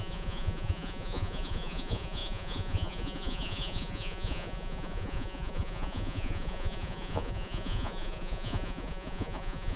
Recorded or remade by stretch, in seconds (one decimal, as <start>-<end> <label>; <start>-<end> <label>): 0.0-9.8 remade